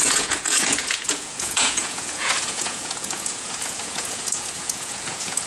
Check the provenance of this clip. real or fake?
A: fake